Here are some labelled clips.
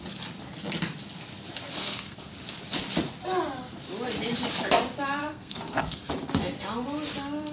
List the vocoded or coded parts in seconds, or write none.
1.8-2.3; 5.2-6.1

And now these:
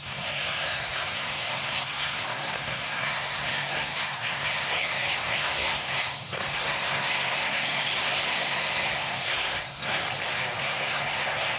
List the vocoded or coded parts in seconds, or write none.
0.0-10.0; 10.6-11.6

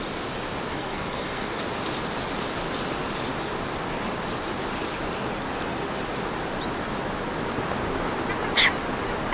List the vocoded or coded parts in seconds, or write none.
0.7-1.6

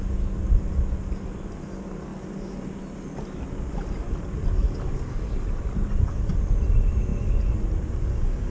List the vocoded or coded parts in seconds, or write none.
none

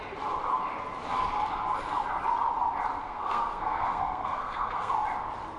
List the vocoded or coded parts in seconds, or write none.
3.0-4.9

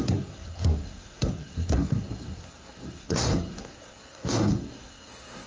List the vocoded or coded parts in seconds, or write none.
0.0-5.5

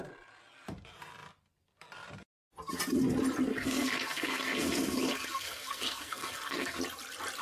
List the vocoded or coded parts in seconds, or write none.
3.5-6.8

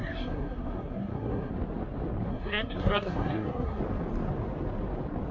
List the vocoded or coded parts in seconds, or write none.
0.0-1.5; 2.3-3.8